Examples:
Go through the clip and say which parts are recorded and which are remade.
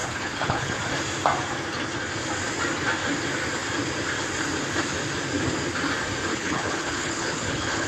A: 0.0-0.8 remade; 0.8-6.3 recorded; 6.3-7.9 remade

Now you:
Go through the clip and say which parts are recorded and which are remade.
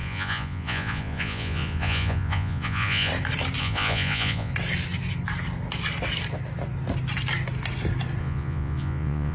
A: 0.0-3.1 remade; 3.1-3.6 recorded; 3.6-4.5 remade; 4.5-8.2 recorded; 8.2-9.3 remade